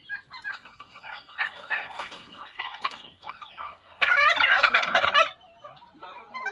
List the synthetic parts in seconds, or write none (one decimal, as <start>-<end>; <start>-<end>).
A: 0.5-4.1; 4.5-5.1